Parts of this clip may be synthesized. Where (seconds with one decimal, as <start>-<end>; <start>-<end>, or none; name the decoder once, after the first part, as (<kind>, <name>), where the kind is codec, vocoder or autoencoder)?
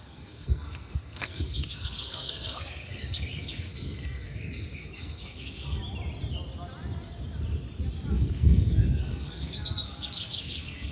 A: 0.0-5.8 (codec, SNAC); 8.1-10.9